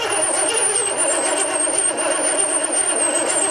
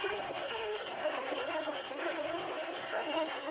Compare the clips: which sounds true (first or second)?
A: first